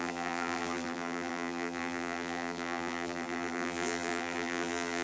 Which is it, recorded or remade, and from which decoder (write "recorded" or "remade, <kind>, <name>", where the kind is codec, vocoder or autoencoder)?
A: remade, vocoder, BigVGAN v2